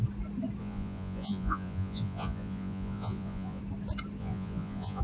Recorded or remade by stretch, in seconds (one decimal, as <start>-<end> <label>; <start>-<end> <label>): 0.0-0.6 recorded; 0.6-3.6 remade; 3.6-4.2 recorded; 4.2-5.0 remade